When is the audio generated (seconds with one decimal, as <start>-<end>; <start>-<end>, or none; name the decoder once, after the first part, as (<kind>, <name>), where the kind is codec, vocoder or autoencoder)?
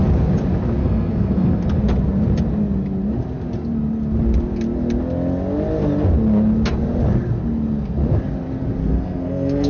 0.8-1.8 (codec, SNAC); 8.8-9.7